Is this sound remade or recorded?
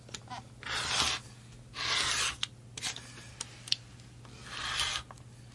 recorded